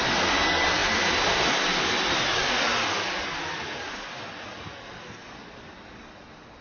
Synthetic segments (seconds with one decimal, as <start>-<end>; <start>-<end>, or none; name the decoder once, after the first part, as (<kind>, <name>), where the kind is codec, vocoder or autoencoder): none